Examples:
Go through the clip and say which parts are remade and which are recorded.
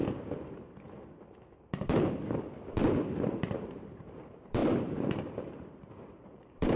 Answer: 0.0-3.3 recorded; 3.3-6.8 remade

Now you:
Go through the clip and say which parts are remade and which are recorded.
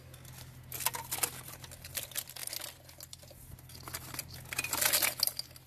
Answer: 0.0-5.7 recorded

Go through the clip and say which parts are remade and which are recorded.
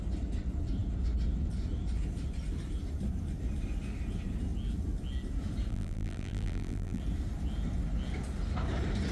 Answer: 0.0-5.7 recorded; 5.7-7.0 remade; 7.0-9.1 recorded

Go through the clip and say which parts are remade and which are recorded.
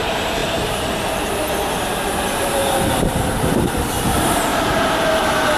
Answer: 0.0-2.6 remade; 2.6-3.6 recorded; 3.6-5.6 remade